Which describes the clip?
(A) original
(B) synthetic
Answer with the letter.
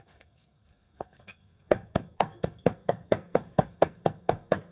B